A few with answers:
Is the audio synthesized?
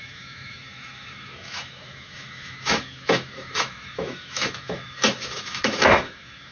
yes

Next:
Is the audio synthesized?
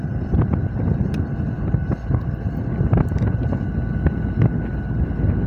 no